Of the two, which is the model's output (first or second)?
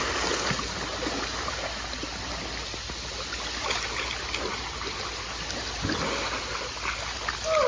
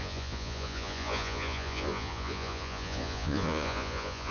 second